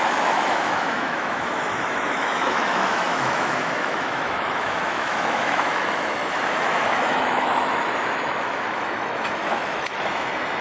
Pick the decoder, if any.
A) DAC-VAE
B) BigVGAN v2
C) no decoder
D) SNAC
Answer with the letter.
A